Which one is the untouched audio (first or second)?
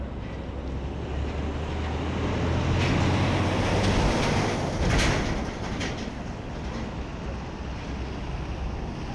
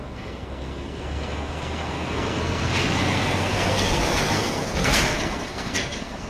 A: first